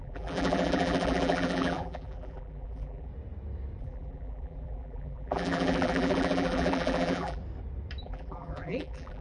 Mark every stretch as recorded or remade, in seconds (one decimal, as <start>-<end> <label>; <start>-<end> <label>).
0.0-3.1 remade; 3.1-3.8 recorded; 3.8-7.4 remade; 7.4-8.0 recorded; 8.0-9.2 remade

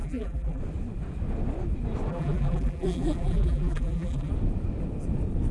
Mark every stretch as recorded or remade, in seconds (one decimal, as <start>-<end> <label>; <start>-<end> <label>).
0.0-0.6 remade; 0.6-2.1 recorded; 2.1-4.3 remade; 4.3-5.5 recorded

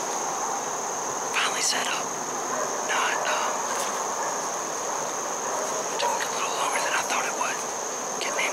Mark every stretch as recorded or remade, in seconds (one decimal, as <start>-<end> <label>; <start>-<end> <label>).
0.0-6.1 recorded; 6.1-8.1 remade; 8.1-8.5 recorded

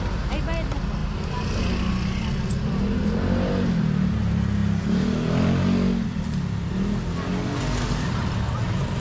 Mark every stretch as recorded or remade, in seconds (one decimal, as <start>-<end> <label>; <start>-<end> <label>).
0.0-9.0 recorded

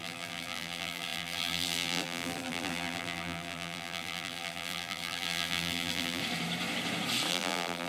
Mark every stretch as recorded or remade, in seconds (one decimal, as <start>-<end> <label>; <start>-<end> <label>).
0.0-6.2 remade; 6.2-7.3 recorded; 7.3-7.9 remade

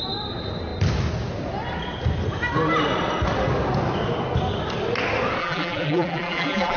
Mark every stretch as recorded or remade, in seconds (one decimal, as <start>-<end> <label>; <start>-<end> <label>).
0.0-5.4 recorded; 5.4-6.8 remade

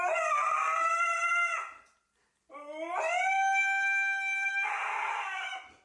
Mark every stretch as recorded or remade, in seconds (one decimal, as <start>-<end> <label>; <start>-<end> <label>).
0.0-5.8 recorded

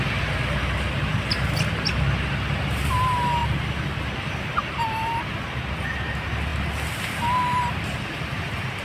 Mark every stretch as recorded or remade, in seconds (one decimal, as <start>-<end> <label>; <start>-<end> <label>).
0.0-4.6 recorded; 4.6-5.2 remade; 5.2-8.8 recorded